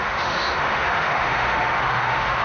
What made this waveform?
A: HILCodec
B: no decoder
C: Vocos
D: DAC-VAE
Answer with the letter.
D